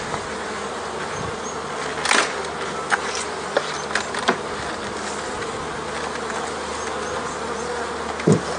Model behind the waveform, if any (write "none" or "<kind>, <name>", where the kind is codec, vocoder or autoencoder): none